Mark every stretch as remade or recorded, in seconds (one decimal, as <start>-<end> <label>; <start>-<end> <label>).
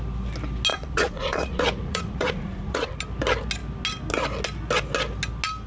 0.0-0.7 recorded; 0.7-2.9 remade; 2.9-5.7 recorded